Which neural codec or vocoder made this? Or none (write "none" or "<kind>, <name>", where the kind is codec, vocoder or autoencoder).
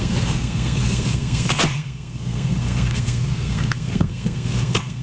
codec, SNAC